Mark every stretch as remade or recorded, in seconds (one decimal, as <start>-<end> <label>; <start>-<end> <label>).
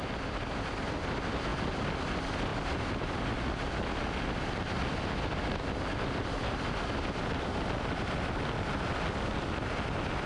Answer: 0.0-2.5 recorded; 2.5-3.0 remade; 3.0-10.3 recorded